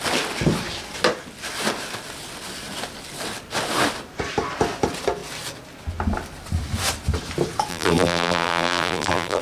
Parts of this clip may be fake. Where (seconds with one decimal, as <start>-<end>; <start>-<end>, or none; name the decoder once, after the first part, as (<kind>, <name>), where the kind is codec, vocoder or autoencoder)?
7.7-9.4 (vocoder, BigVGAN v2)